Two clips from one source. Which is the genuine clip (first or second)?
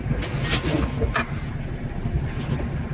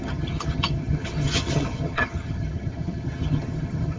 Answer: first